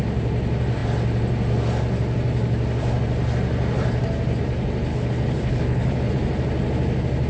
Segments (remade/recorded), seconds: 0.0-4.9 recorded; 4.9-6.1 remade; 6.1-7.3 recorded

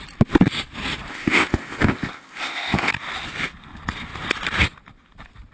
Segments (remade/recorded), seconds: 0.0-1.1 recorded; 1.1-2.9 remade; 2.9-5.5 recorded

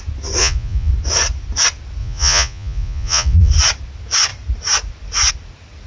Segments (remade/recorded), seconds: 0.0-0.4 recorded; 0.4-0.9 remade; 0.9-2.0 recorded; 2.0-3.5 remade; 3.5-5.9 recorded

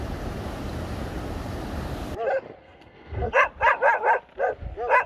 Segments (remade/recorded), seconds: 0.0-2.6 recorded; 2.6-3.3 remade; 3.3-5.1 recorded

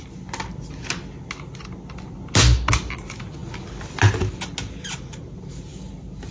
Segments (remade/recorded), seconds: 0.0-6.3 recorded

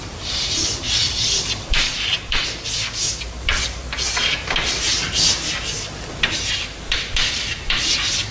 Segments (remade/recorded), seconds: 0.0-2.4 remade; 2.4-3.0 recorded; 3.0-3.8 remade; 3.8-4.8 recorded; 4.8-8.3 remade